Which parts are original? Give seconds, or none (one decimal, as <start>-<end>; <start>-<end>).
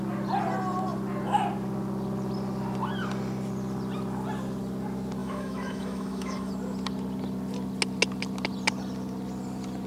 0.0-5.2; 6.5-9.9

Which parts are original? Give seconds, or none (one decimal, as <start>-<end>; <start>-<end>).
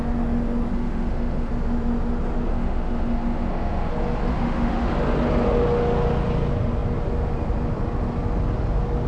0.0-0.7; 1.5-2.5; 3.9-4.3; 4.9-9.1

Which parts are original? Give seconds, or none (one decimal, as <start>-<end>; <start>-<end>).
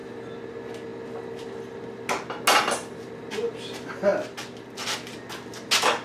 0.0-6.0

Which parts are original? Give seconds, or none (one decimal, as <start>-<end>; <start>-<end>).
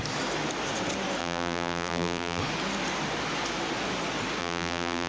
0.0-1.2; 2.4-4.4